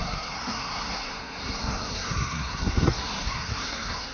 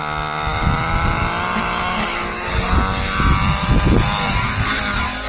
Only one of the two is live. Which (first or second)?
second